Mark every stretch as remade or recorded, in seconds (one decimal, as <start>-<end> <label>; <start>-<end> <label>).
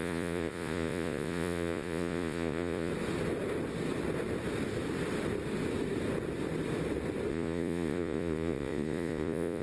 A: 0.0-2.9 remade; 2.9-7.3 recorded; 7.3-9.6 remade